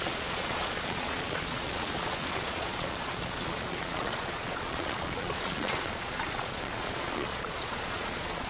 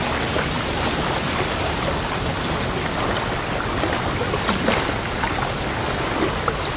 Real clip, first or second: second